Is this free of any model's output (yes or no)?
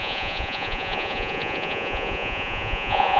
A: no